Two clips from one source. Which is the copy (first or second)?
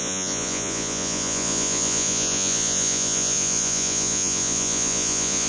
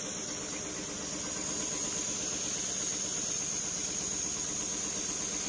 first